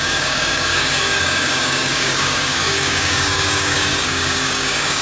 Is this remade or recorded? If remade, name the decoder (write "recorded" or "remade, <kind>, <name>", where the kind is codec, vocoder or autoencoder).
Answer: remade, codec, DAC